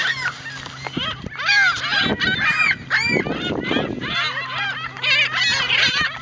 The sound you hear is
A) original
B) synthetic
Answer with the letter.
A